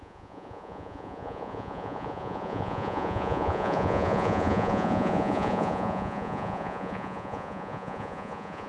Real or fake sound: fake